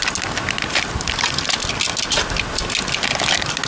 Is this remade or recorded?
recorded